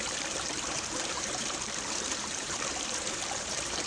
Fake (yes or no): yes